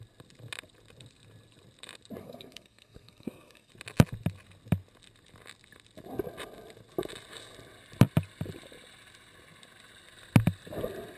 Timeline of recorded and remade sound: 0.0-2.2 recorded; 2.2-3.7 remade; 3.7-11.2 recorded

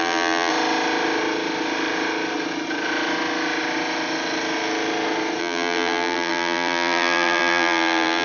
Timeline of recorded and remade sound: 0.0-0.5 remade; 0.5-5.4 recorded; 5.4-8.2 remade

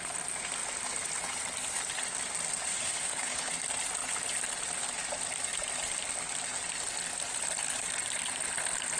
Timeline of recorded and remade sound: 0.0-2.7 recorded; 2.7-3.5 remade; 3.5-9.0 recorded

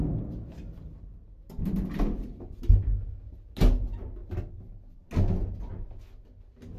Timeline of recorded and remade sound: 0.0-6.8 recorded

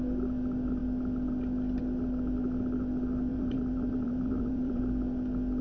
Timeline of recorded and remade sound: 0.0-3.3 recorded; 3.3-4.8 remade; 4.8-5.6 recorded

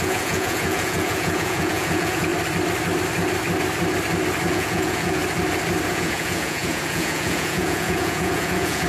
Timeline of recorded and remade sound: 0.0-2.3 remade; 2.3-4.5 recorded; 4.5-5.2 remade; 5.2-5.9 recorded; 5.9-8.9 remade

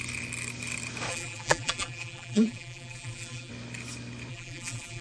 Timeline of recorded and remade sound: 0.0-1.1 recorded; 1.1-3.5 remade; 3.5-4.3 recorded; 4.3-5.0 remade

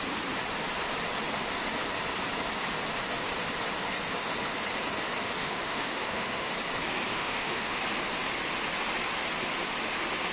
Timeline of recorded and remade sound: 0.0-5.4 recorded; 5.4-6.5 remade; 6.5-7.1 recorded; 7.1-7.8 remade; 7.8-10.3 recorded